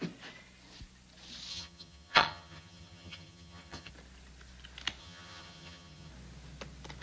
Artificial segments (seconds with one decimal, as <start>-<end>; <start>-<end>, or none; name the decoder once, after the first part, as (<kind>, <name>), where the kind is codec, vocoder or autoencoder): 1.5-3.9 (vocoder, HiFi-GAN); 5.0-6.1